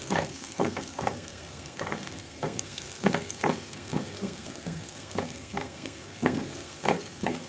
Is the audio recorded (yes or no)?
no